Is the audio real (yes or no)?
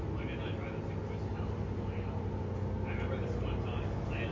yes